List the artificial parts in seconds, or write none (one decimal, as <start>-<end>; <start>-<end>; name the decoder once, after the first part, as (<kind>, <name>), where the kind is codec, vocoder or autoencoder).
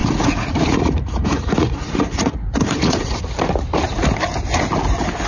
0.0-3.2 (vocoder, Vocos)